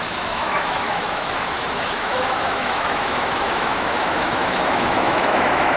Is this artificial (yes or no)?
yes